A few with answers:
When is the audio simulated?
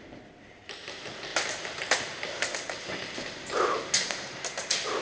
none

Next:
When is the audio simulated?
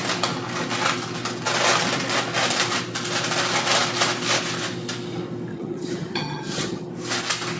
5.5-6.9 (vocoder, HiFi-GAN)